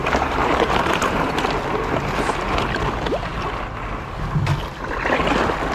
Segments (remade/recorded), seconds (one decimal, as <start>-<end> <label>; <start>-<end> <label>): 0.0-1.5 remade; 1.5-5.7 recorded